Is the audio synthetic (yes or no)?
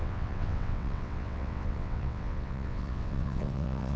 yes